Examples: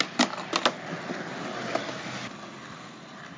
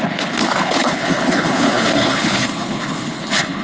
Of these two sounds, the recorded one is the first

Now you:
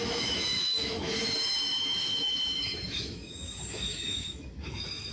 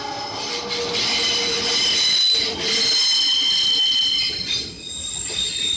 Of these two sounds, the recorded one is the second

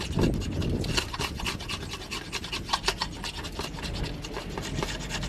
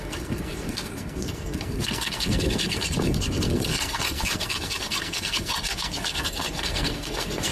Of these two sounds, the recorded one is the first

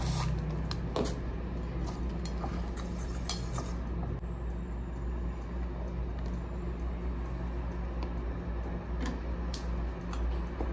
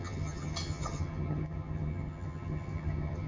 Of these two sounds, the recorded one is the first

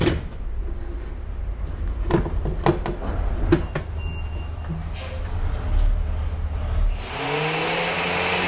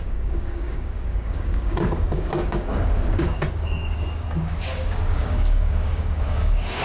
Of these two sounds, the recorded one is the first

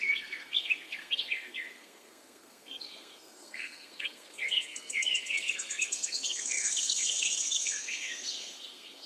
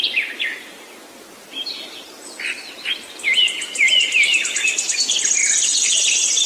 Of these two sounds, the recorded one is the second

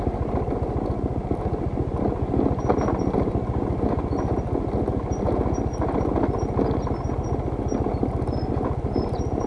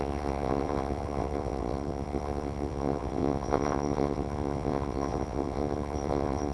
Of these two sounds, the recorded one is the first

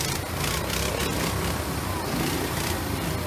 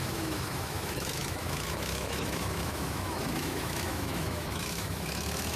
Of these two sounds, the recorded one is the first